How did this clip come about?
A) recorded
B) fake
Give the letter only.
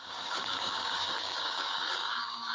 B